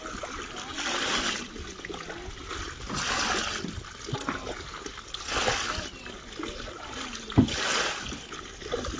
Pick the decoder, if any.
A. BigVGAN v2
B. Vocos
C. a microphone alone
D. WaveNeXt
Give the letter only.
C